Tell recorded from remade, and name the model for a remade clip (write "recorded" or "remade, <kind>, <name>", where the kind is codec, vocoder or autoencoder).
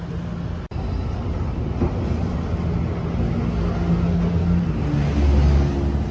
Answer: recorded